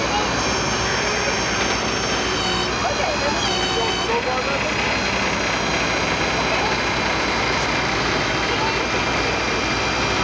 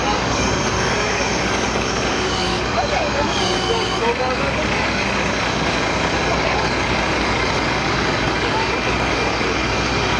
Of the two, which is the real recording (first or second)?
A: first